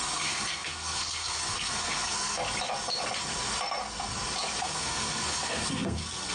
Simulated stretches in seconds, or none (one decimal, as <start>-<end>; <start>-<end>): 0.0-2.4; 4.6-6.3